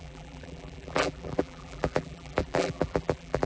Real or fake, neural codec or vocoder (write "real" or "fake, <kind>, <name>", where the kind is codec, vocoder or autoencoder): fake, vocoder, BigVGAN v2